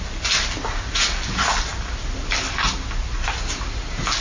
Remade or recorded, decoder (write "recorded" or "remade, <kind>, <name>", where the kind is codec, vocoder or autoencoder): recorded